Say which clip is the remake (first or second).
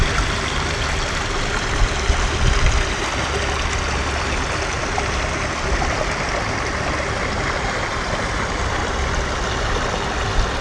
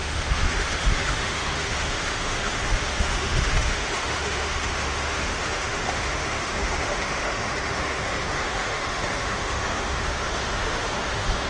second